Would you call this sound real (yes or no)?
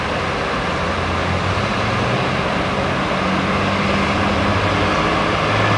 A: yes